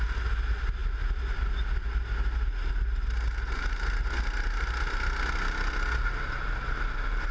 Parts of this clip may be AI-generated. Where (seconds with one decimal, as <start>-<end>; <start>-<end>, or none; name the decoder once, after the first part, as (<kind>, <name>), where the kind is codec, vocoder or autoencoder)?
none